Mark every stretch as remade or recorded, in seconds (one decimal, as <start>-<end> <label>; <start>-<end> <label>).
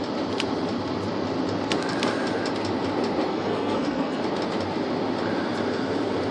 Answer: 0.0-3.3 recorded; 3.3-4.2 remade; 4.2-6.3 recorded